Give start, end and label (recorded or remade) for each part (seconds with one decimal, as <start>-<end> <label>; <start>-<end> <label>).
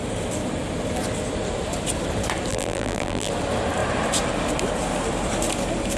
0.0-2.5 recorded; 2.5-3.3 remade; 3.3-6.0 recorded